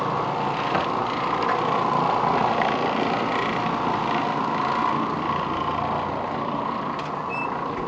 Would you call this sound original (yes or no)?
yes